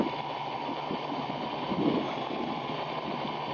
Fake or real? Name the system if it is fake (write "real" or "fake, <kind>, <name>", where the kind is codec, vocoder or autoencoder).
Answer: real